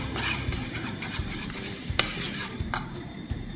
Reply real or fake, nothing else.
fake